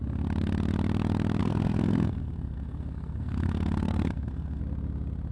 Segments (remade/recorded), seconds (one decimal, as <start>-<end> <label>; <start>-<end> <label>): 0.0-1.4 recorded; 1.4-4.6 remade; 4.6-5.3 recorded